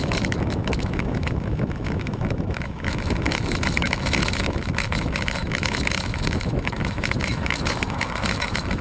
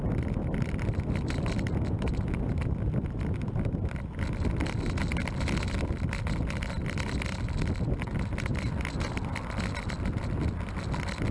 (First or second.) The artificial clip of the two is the first